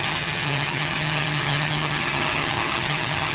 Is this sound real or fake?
fake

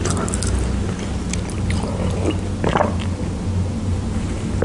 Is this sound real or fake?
real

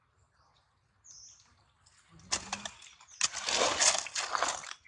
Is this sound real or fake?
real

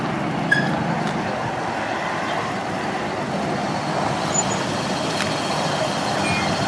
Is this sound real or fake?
real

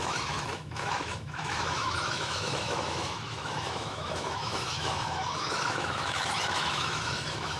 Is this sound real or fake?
fake